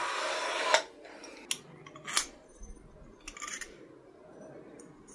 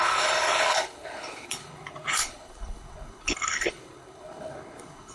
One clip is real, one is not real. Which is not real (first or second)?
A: second